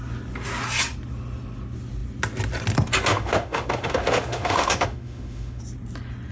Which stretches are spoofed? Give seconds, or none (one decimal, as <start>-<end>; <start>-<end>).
3.1-5.6